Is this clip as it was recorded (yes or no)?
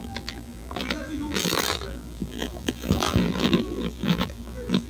no